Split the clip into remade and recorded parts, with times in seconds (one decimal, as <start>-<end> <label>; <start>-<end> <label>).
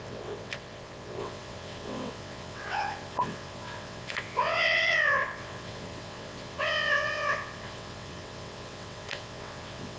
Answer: 0.0-10.0 remade